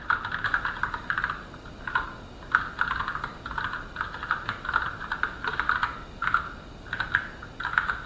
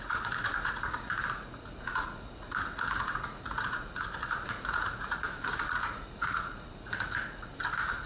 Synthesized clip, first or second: second